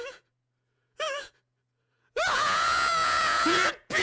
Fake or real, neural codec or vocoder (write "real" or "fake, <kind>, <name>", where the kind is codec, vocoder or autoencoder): fake, vocoder, Vocos